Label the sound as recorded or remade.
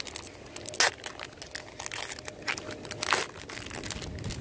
recorded